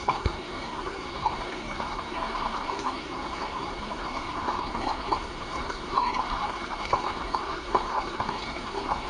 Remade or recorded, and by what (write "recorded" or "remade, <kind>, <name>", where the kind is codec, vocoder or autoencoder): remade, codec, SNAC